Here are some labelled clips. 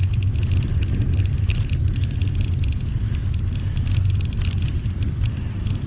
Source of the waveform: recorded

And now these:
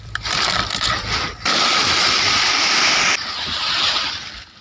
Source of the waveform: remade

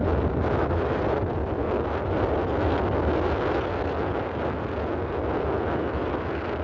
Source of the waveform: recorded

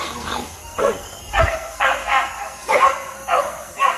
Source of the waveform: remade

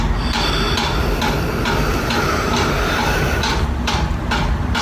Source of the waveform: recorded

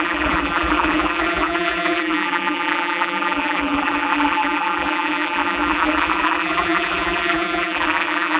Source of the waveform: remade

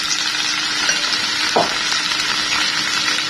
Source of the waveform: recorded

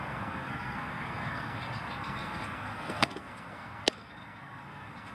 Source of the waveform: remade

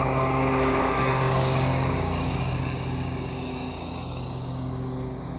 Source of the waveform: remade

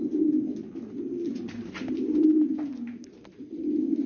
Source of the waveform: recorded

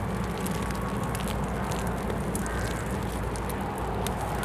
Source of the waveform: recorded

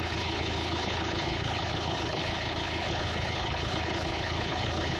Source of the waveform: remade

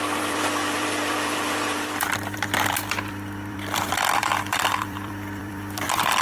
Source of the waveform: remade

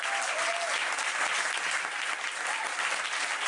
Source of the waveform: recorded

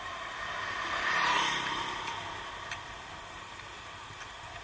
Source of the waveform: recorded